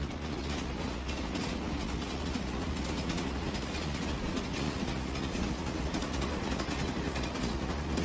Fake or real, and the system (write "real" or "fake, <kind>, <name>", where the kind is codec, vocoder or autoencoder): fake, vocoder, Vocos